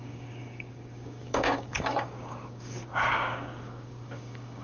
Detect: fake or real fake